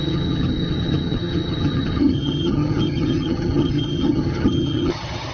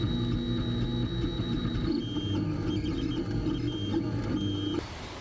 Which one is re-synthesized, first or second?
first